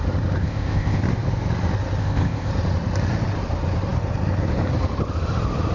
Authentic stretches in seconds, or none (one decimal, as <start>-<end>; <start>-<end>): 0.0-0.4; 1.0-2.0; 2.5-5.7